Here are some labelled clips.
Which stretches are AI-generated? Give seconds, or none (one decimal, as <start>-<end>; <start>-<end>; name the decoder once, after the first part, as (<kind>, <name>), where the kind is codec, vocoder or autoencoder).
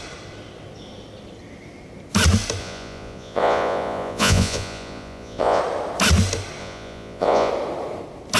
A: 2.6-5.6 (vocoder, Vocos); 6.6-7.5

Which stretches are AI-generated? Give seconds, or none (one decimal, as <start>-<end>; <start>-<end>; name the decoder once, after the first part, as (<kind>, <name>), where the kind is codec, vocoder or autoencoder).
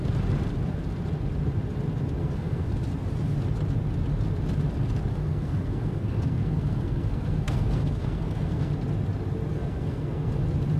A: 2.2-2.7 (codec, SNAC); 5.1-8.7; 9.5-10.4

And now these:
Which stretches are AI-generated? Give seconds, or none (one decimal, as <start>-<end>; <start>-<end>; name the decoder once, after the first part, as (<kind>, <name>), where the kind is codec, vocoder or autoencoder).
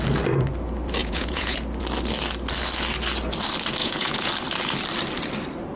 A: 1.0-1.6 (vocoder, Vocos); 3.8-4.3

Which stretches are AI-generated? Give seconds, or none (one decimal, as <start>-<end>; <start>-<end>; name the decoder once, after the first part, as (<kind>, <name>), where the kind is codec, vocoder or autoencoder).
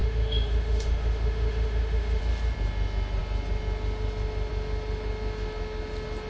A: 0.0-2.2 (autoencoder, DAC-VAE)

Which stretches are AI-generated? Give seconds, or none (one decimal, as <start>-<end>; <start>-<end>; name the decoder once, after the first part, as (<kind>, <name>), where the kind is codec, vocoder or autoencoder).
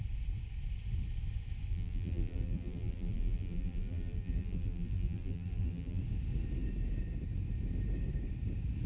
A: 1.7-6.0 (vocoder, BigVGAN v2)